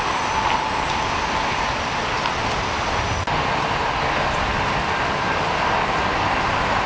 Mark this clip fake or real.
real